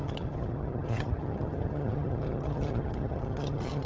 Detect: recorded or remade remade